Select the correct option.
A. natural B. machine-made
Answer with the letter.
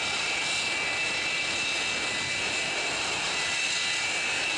A